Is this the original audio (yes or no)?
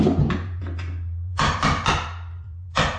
no